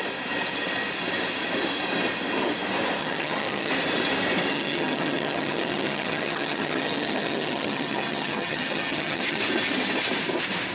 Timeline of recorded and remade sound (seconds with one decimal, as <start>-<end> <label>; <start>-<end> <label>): 0.0-3.0 recorded; 3.0-3.7 remade; 3.7-4.5 recorded; 4.5-9.4 remade; 9.4-10.7 recorded